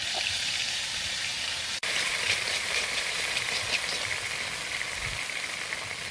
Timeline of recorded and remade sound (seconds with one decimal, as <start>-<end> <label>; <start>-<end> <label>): 0.0-3.7 remade; 3.7-6.1 recorded